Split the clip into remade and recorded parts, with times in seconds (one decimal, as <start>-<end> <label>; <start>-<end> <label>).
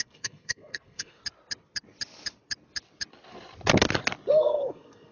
0.0-1.2 remade; 1.2-4.3 recorded; 4.3-5.1 remade